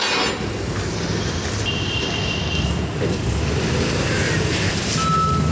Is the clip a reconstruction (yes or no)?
no